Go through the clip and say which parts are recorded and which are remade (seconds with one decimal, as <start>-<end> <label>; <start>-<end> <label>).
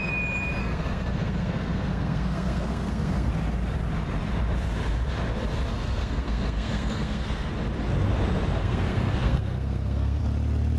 0.0-0.6 recorded; 0.6-3.3 remade; 3.3-5.7 recorded; 5.7-7.5 remade; 7.5-8.6 recorded; 8.6-10.2 remade; 10.2-10.8 recorded